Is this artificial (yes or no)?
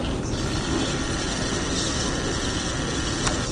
no